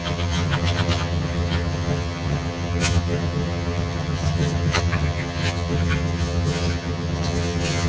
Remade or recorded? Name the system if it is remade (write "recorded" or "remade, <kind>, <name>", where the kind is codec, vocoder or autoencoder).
remade, vocoder, HiFi-GAN